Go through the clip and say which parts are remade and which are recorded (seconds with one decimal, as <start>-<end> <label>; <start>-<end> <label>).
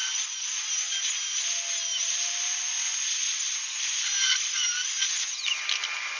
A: 0.0-1.9 recorded; 1.9-2.6 remade; 2.6-6.2 recorded